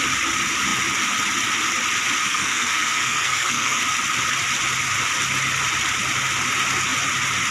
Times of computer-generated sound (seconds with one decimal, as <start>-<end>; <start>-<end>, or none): 2.2-3.8